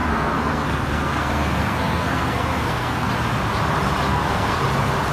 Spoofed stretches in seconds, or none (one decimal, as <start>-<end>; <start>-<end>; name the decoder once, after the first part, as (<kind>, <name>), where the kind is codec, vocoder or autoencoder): 0.0-3.1 (codec, SNAC); 4.1-4.6